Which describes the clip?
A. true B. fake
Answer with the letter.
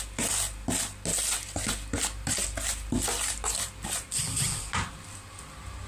A